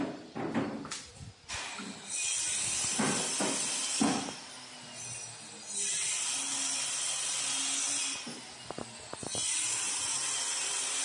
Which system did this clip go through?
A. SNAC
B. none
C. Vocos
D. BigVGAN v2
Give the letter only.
B